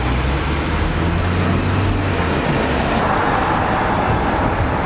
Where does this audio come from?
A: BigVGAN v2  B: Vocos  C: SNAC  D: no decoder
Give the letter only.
D